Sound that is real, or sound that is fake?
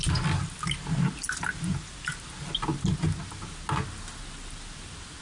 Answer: real